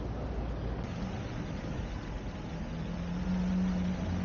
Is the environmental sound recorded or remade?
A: recorded